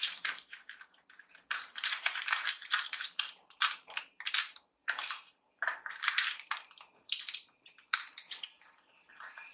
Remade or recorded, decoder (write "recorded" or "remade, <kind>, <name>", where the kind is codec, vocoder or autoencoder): remade, vocoder, BigVGAN v2